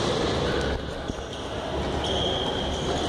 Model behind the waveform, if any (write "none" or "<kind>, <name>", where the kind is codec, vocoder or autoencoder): none